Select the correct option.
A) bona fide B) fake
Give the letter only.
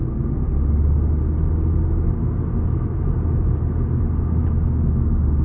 A